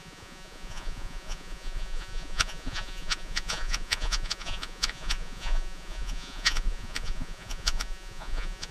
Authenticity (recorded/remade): remade